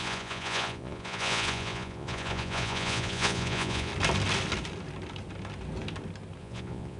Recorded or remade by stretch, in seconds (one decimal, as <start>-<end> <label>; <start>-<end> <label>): 0.0-3.9 remade; 3.9-6.4 recorded; 6.4-7.0 remade